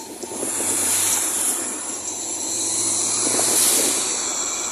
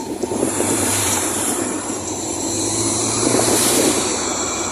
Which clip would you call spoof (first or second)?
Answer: second